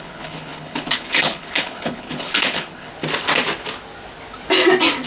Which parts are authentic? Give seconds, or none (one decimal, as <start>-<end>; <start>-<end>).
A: 2.9-5.1